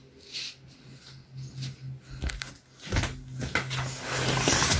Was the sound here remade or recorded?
recorded